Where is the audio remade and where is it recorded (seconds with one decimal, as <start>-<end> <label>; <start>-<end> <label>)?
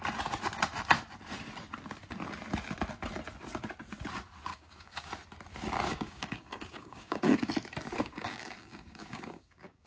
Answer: 0.0-4.5 recorded; 4.5-5.1 remade; 5.1-5.9 recorded; 5.9-7.5 remade; 7.5-8.0 recorded; 8.0-9.9 remade